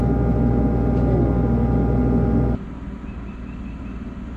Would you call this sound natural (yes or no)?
yes